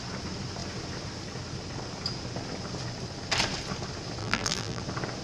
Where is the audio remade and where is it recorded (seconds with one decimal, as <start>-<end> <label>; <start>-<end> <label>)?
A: 0.0-4.2 recorded; 4.2-4.8 remade; 4.8-5.2 recorded